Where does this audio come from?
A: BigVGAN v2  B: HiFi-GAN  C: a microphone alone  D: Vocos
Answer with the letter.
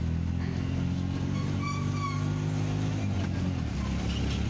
C